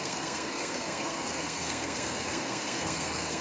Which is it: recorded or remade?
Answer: remade